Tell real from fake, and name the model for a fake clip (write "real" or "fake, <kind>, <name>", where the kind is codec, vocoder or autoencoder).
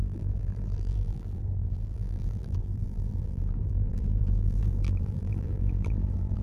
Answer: fake, vocoder, BigVGAN v2